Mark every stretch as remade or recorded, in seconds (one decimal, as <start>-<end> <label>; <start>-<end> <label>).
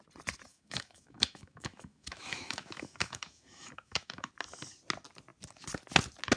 0.0-0.5 recorded; 0.5-4.3 remade; 4.3-6.4 recorded